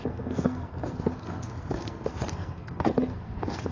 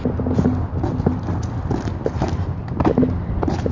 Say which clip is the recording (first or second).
second